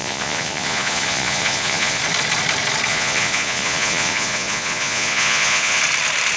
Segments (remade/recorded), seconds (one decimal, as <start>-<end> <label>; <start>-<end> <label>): 0.0-2.0 remade; 2.0-2.9 recorded; 2.9-5.8 remade; 5.8-6.4 recorded